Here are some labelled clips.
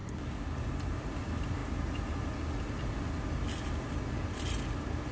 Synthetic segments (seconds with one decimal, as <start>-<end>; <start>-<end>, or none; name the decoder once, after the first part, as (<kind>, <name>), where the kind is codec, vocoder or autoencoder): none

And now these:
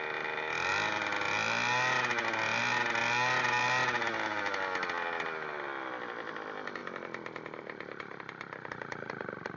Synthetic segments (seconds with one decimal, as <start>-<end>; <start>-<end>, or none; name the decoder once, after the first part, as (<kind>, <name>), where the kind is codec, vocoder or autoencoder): none

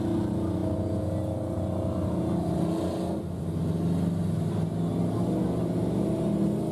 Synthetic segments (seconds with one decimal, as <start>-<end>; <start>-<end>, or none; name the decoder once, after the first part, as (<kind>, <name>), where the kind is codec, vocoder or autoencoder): none

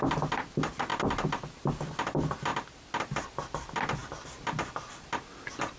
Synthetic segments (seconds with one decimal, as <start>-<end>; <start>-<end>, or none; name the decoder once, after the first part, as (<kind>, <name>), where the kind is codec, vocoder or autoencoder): none

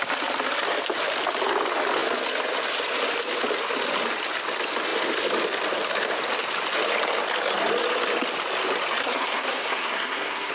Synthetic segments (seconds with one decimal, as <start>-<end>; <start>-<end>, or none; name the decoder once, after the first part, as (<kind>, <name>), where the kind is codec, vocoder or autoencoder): 9.0-10.5 (codec, SNAC)

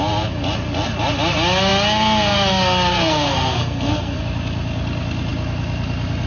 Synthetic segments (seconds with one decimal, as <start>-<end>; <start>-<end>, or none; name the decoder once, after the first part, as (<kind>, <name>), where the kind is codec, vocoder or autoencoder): 2.9-4.2 (codec, SNAC)

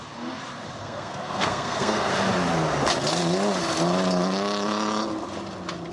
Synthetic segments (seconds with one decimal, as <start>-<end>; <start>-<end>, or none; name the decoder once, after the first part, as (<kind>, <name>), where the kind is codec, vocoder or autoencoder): 0.8-2.1 (codec, SNAC)